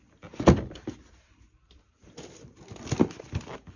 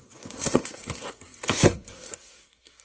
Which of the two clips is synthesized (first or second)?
second